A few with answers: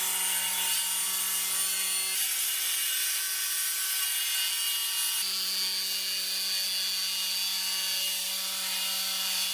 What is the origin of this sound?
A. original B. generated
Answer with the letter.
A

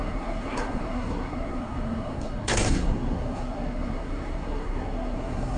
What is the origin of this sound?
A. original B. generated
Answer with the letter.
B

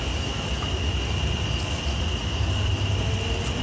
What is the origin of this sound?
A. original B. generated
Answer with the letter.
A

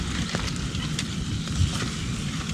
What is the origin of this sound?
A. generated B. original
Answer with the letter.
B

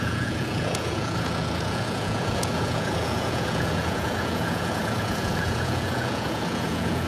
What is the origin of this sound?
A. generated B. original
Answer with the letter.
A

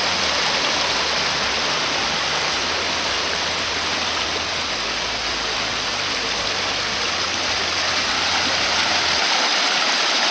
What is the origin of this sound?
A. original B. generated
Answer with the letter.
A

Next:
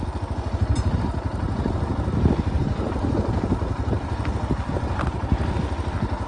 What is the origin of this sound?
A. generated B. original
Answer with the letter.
B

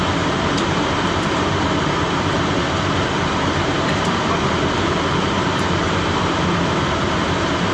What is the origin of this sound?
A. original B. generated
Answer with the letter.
B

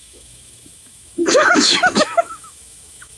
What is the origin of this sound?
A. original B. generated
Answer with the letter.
B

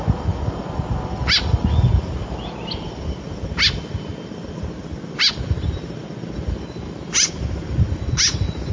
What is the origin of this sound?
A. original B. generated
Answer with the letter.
A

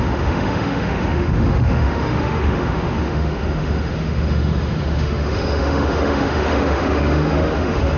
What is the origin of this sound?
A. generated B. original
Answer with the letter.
A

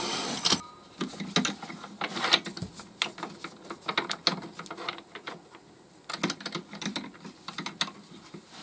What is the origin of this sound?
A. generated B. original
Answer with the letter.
B